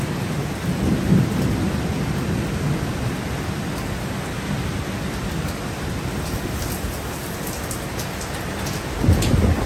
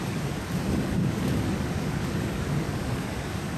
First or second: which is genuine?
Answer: first